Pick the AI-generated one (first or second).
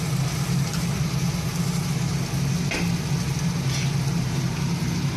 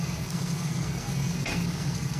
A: second